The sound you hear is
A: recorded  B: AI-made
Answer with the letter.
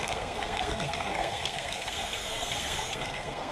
B